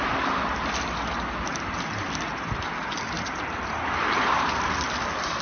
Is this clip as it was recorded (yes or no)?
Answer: yes